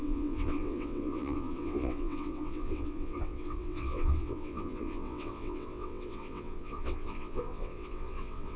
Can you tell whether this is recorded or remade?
remade